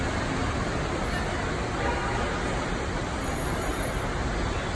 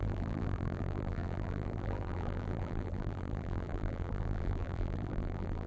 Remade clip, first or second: second